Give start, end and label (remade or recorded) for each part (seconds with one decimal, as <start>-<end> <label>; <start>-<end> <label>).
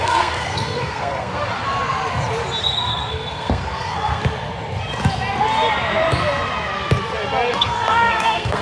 0.0-1.5 remade; 1.5-2.6 recorded; 2.6-4.2 remade; 4.2-7.5 recorded; 7.5-8.6 remade